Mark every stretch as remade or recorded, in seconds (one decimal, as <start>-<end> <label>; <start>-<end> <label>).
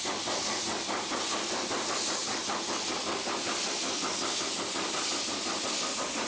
0.0-6.3 recorded